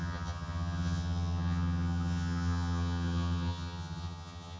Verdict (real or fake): fake